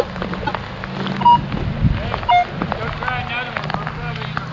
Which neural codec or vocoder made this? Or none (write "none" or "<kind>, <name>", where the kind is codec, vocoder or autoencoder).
none